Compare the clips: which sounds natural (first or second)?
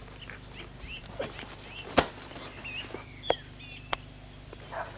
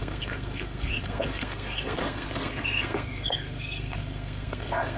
first